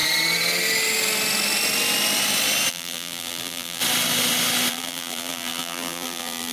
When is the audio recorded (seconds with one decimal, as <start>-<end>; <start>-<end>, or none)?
0.0-2.7; 3.8-4.7